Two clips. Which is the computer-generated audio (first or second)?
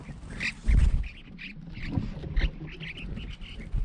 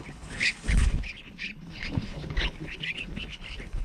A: second